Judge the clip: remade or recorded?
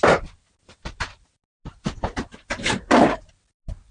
recorded